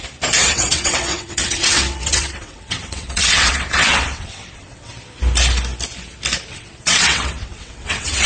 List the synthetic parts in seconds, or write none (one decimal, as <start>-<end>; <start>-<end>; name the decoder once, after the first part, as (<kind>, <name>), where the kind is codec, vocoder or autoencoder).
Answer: 0.4-4.9 (vocoder, WaveNeXt); 6.5-8.3